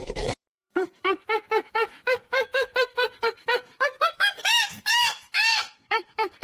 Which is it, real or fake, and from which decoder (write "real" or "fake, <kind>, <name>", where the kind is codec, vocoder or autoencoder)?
fake, codec, SNAC